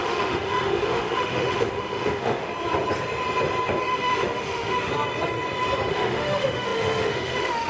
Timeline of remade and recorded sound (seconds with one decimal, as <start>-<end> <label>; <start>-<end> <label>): 0.0-2.5 remade; 2.5-3.8 recorded; 3.8-4.9 remade; 4.9-5.9 recorded; 5.9-7.7 remade

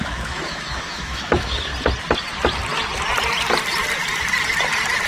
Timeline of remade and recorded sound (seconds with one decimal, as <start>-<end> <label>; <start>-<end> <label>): 0.0-1.7 remade; 1.7-5.1 recorded

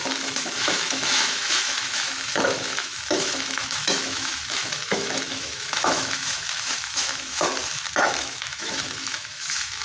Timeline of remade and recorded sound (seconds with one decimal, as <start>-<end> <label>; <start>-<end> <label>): 0.0-7.5 remade; 7.5-8.0 recorded; 8.0-9.8 remade

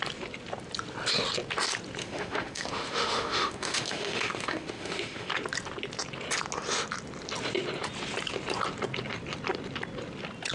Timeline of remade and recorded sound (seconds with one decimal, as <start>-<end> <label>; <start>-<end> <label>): 0.0-2.0 recorded; 2.0-5.3 remade; 5.3-10.5 recorded

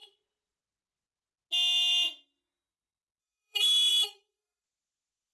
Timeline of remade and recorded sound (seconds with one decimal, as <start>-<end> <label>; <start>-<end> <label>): 0.0-3.2 recorded; 3.2-5.3 remade

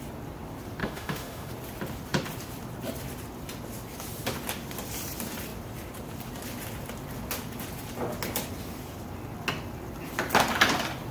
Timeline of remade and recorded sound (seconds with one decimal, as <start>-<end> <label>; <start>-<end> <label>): 0.0-0.8 recorded; 0.8-1.5 remade; 1.5-11.1 recorded

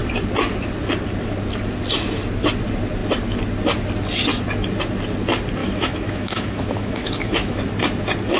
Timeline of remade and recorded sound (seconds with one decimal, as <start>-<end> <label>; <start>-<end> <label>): 0.0-5.6 recorded; 5.6-7.6 remade; 7.6-8.4 recorded

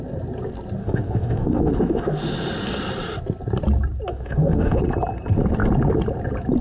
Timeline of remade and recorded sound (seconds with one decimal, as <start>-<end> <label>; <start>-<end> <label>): 0.0-0.8 recorded; 0.8-2.2 remade; 2.2-4.1 recorded; 4.1-4.8 remade; 4.8-6.6 recorded